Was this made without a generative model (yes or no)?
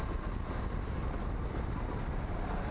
yes